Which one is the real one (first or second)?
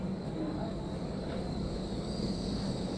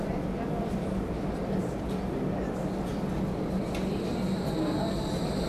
second